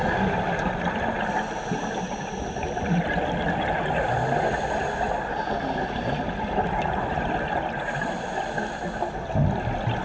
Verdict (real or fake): real